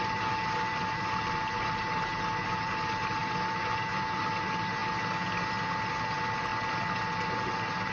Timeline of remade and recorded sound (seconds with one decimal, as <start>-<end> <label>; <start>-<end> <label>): 0.0-3.2 recorded; 3.2-3.8 remade; 3.8-7.9 recorded